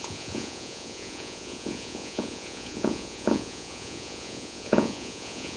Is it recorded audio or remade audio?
remade